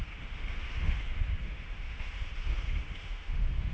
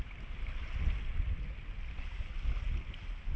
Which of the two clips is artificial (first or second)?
first